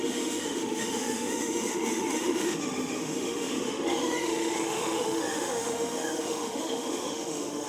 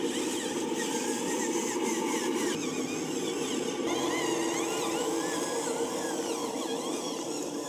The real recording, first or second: second